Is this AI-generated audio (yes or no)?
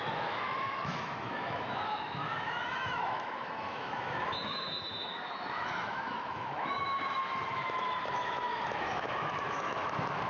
yes